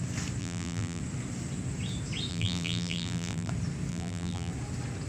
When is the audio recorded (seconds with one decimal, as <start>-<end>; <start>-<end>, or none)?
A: 0.0-0.4; 1.0-2.3; 3.5-3.9; 4.5-5.1